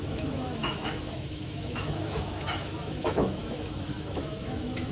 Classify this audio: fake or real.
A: fake